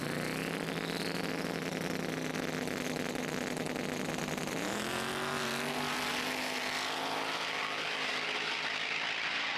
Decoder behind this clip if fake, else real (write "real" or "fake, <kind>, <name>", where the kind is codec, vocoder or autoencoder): real